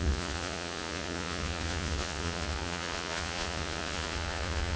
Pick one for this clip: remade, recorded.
remade